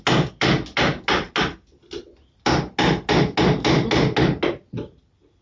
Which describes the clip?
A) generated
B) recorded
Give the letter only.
B